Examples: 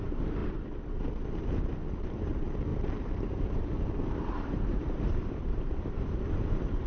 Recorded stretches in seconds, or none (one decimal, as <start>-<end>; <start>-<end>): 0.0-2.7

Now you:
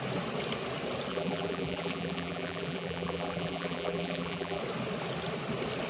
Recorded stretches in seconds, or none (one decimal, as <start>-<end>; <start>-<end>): 0.0-1.1; 4.6-5.9

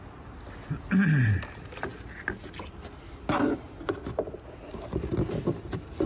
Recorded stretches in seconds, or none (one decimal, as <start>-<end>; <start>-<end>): 0.0-6.1

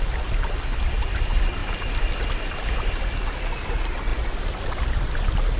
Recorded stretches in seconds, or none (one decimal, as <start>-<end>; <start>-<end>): 0.0-5.6